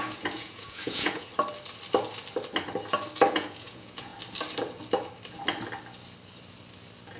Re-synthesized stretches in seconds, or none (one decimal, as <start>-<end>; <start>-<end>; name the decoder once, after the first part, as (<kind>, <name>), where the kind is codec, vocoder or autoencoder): 0.0-1.3 (vocoder, Vocos); 3.3-4.1